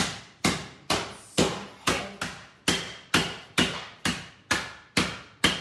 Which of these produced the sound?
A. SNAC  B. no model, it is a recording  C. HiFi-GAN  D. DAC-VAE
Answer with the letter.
B